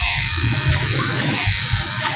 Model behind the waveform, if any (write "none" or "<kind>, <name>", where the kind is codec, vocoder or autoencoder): autoencoder, DAC-VAE